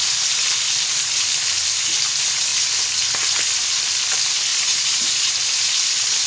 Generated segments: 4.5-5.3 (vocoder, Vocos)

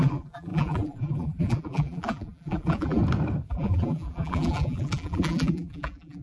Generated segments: 0.0-3.0 (vocoder, BigVGAN v2); 3.5-6.2

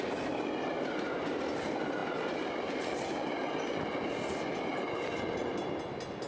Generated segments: none

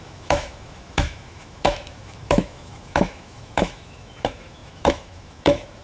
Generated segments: 0.0-5.8 (autoencoder, DAC-VAE)

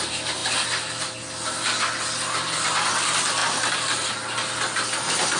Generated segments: none

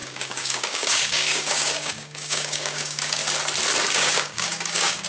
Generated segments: 0.0-3.2 (codec, DAC); 3.9-5.1

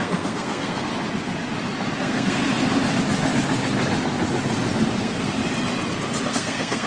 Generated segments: 0.0-0.9 (codec, SNAC); 2.0-2.4; 5.0-5.4; 6.3-6.9